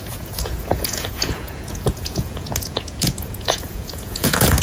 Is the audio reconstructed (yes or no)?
yes